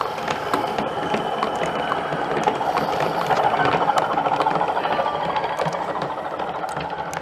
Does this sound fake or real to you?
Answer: real